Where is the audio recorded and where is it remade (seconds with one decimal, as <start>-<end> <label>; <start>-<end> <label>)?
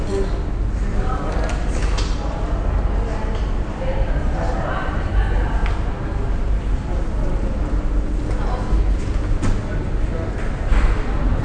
0.0-3.1 recorded; 3.1-5.0 remade; 5.0-11.4 recorded